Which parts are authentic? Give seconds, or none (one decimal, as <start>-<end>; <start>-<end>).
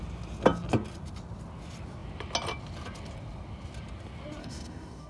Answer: 0.0-4.4